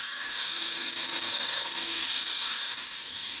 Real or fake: fake